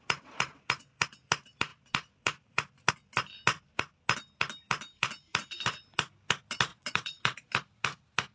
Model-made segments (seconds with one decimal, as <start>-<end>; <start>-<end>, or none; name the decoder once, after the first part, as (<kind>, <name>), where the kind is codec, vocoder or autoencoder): 6.7-7.5 (vocoder, Vocos)